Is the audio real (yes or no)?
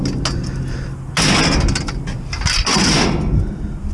yes